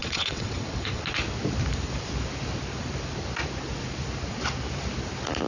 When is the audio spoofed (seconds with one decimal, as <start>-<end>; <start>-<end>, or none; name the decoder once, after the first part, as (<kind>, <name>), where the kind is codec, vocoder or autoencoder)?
0.0-1.0 (vocoder, WaveNeXt)